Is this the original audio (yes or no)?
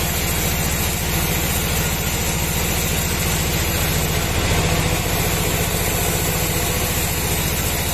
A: yes